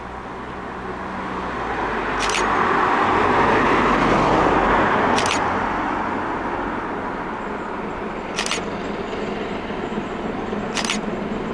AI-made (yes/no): no